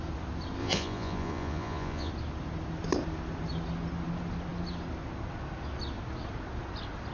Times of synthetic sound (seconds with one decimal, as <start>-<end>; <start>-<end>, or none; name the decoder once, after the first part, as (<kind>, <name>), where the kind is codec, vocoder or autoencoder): 0.6-2.1 (vocoder, Vocos)